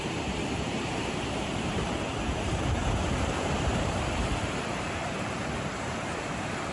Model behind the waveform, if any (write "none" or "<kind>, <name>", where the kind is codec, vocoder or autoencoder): vocoder, BigVGAN v2